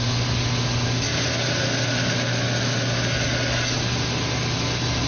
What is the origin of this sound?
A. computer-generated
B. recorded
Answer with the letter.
B